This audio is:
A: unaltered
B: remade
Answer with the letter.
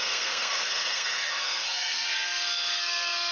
B